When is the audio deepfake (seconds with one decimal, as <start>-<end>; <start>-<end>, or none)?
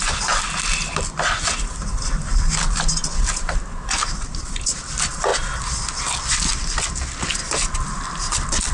none